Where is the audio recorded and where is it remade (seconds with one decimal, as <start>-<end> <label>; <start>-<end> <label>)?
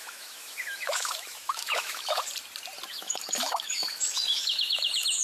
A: 0.0-2.3 remade; 2.3-2.9 recorded; 2.9-5.2 remade